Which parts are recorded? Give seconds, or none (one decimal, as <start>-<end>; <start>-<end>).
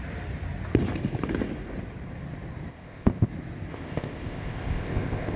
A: 0.0-2.7; 3.3-3.7